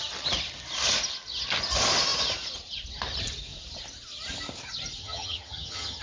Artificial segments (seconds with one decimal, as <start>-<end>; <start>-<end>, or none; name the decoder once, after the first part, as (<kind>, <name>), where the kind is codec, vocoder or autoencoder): 5.0-6.0 (vocoder, HiFi-GAN)